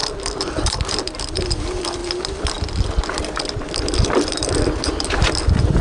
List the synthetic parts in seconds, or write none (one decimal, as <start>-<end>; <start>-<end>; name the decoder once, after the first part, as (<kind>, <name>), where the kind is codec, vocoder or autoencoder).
0.0-2.0 (vocoder, BigVGAN v2); 3.5-5.8